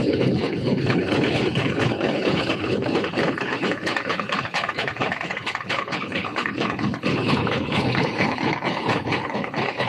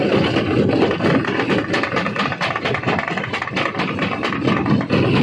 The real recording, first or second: second